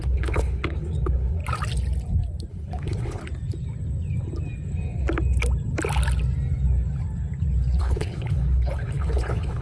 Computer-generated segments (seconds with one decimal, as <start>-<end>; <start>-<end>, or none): 0.0-1.4; 2.5-3.2; 7.8-9.6